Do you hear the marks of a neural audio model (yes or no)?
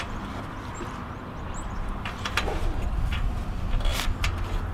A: no